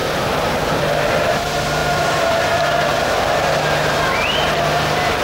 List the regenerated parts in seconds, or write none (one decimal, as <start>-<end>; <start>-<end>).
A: 0.0-0.8; 1.8-2.4